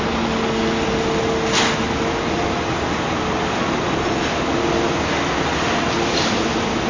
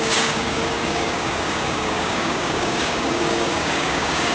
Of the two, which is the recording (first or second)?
first